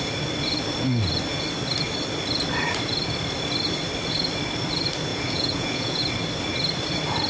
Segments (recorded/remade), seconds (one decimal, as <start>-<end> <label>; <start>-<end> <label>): 0.0-5.1 recorded; 5.1-6.0 remade; 6.0-7.3 recorded